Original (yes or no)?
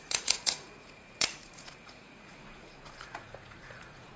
no